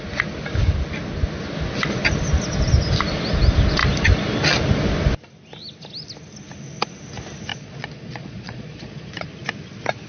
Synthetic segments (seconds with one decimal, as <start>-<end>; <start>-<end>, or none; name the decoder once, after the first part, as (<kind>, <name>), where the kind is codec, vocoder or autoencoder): 7.5-9.3 (vocoder, Vocos)